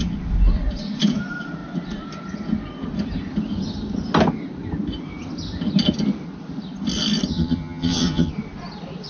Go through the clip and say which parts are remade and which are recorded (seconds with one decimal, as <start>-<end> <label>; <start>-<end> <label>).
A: 0.0-7.3 recorded; 7.3-8.3 remade; 8.3-9.1 recorded